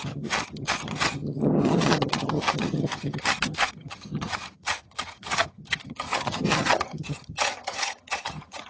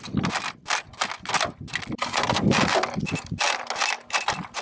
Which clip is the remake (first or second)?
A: first